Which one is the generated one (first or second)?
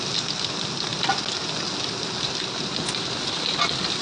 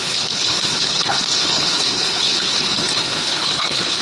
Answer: second